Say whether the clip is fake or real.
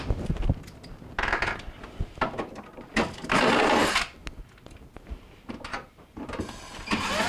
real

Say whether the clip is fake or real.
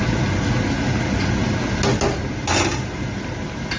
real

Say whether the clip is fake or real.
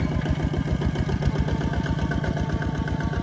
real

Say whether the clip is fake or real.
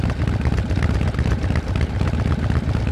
real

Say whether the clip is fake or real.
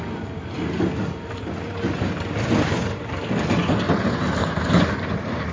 real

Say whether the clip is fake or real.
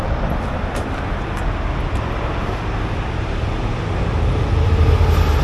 real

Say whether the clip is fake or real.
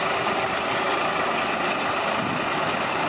real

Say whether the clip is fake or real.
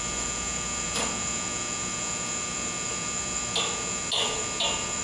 real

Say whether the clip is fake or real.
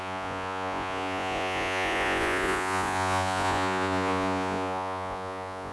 fake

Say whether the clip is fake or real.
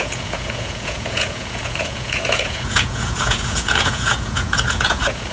fake